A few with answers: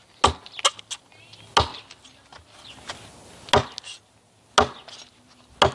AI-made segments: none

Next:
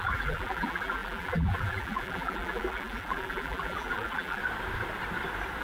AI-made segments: 0.0-4.4 (vocoder, BigVGAN v2)